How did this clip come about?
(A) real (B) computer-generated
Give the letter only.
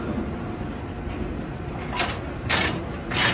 A